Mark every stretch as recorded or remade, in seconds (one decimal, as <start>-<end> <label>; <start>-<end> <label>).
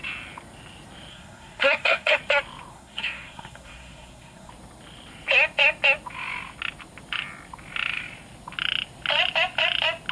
0.0-1.1 recorded; 1.1-2.2 remade; 2.2-2.7 recorded; 2.7-4.5 remade; 4.5-10.1 recorded